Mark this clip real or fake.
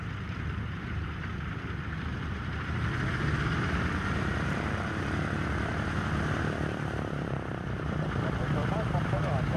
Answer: fake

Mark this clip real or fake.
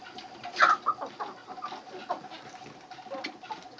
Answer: real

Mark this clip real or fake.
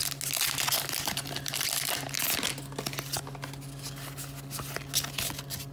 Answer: real